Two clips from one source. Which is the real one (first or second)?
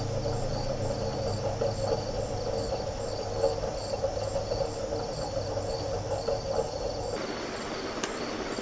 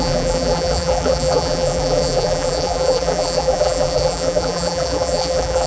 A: first